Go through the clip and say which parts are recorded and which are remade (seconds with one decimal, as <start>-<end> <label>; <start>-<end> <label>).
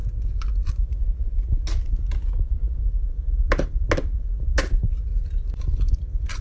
0.0-5.1 recorded; 5.1-6.4 remade